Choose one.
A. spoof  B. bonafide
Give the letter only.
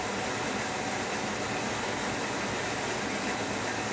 B